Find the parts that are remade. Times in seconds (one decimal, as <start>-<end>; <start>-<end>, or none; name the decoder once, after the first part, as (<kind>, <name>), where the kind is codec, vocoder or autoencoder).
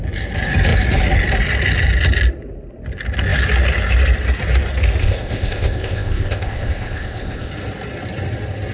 5.0-7.5 (codec, ZipCodec)